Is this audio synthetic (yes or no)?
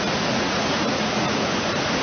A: yes